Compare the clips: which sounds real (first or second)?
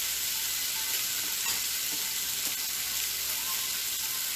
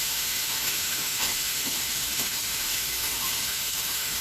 first